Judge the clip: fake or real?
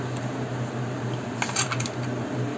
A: real